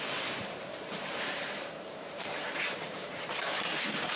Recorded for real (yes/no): no